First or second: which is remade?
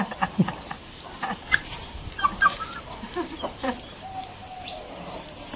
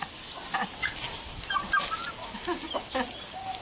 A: first